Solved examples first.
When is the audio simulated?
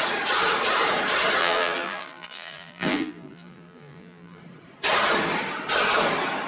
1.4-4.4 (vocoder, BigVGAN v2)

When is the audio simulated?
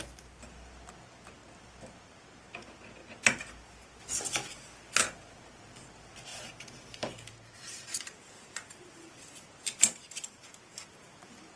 none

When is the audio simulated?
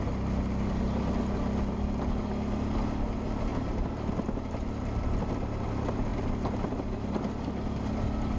none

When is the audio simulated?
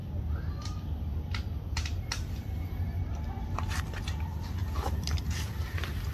4.6-5.5 (vocoder, BigVGAN v2)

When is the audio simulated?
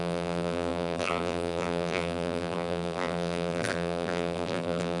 0.0-5.0 (vocoder, BigVGAN v2)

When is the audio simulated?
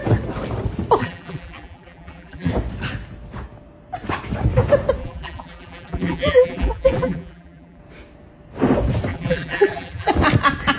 1.0-2.5 (vocoder, BigVGAN v2); 5.0-7.8; 9.1-10.1